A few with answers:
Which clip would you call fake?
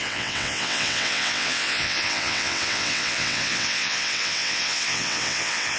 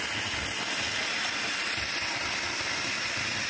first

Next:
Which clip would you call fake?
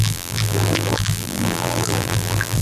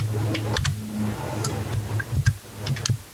first